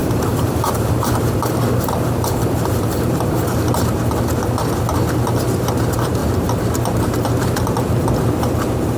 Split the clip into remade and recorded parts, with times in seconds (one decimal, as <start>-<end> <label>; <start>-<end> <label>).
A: 0.0-3.4 remade; 3.4-9.0 recorded